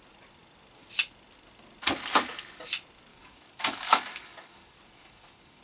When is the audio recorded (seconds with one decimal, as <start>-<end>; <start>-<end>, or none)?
0.0-3.1